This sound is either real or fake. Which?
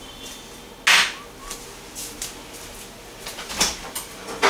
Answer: real